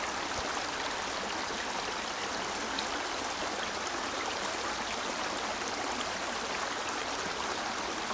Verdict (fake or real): real